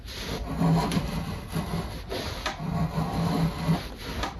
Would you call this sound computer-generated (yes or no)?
no